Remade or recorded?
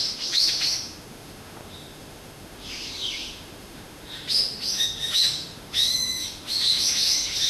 remade